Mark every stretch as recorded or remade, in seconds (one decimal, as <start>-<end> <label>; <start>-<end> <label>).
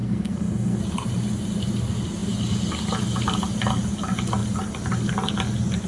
0.0-0.8 remade; 0.8-5.9 recorded